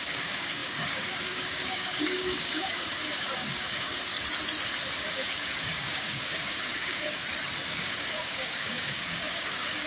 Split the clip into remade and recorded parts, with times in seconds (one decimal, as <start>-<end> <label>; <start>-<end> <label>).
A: 0.0-4.1 remade; 4.1-4.9 recorded; 4.9-7.2 remade; 7.2-7.7 recorded; 7.7-9.9 remade